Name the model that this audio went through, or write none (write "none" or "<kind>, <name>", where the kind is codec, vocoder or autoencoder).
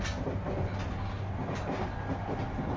none